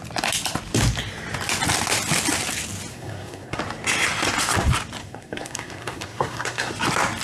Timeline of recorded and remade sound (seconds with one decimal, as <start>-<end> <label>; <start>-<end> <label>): 0.0-2.9 recorded; 2.9-3.6 remade; 3.6-5.0 recorded; 5.0-6.7 remade; 6.7-7.2 recorded